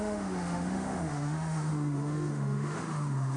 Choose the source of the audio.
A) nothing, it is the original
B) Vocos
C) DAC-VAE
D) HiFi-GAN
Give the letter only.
C